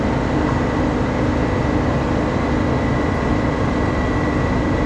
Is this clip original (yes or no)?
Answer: yes